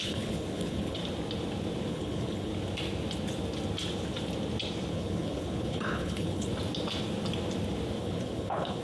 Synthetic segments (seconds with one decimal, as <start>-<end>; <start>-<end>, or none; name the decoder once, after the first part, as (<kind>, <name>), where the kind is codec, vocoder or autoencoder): 0.0-1.0 (codec, HILCodec); 1.9-2.5; 4.9-6.5; 8.0-8.8